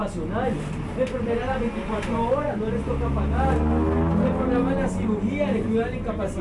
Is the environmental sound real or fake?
real